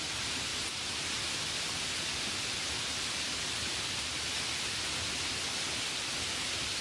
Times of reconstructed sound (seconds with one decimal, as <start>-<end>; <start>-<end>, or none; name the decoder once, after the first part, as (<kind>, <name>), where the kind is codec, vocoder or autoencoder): 0.5-1.2 (vocoder, BigVGAN v2); 2.1-3.8